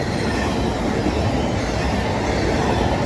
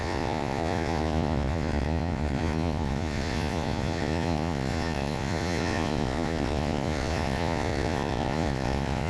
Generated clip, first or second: second